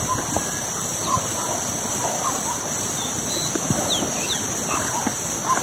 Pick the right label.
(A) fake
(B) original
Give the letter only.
B